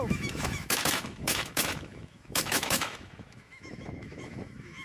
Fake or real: fake